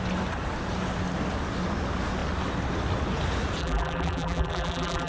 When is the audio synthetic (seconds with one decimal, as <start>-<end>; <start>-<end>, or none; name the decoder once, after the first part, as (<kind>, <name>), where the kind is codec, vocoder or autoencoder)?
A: 3.6-5.1 (vocoder, BigVGAN v2)